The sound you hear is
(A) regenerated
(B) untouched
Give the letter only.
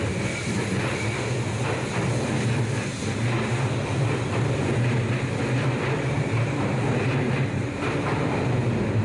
B